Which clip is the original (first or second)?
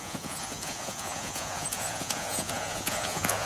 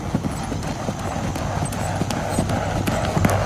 second